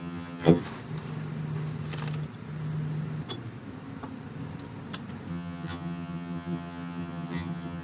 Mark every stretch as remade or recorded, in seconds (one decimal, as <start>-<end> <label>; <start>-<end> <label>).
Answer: 0.0-0.6 remade; 0.6-5.3 recorded; 5.3-7.8 remade